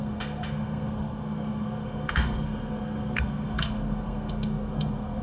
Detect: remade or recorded remade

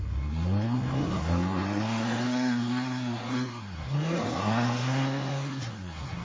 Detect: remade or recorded remade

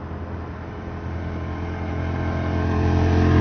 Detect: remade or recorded recorded